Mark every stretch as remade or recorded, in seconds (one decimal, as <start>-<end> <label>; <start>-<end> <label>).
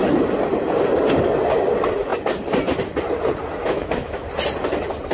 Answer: 0.0-3.6 recorded; 3.6-4.3 remade; 4.3-5.1 recorded